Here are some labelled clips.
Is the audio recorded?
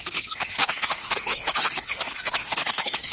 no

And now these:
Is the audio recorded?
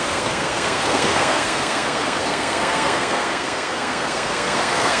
no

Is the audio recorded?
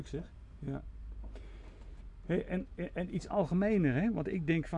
yes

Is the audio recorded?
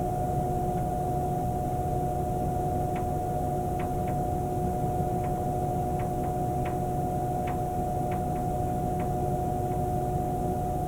yes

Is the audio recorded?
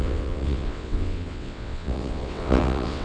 no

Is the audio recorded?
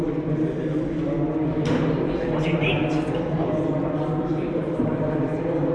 yes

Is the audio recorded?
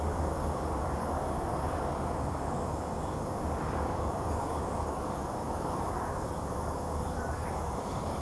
no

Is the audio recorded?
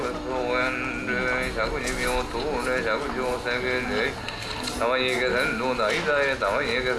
yes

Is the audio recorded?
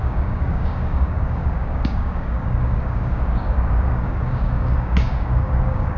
no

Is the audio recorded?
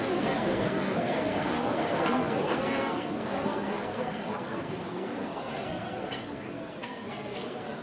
no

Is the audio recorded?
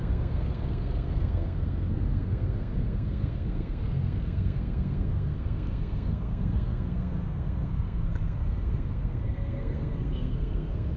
no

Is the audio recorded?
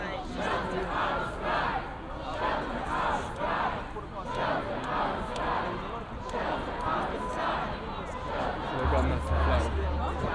yes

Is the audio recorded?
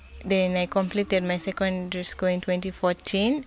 yes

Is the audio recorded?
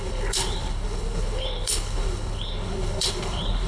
no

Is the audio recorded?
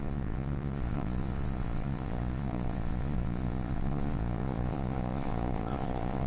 no